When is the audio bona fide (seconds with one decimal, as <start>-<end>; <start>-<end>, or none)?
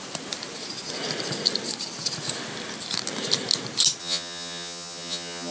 0.0-4.0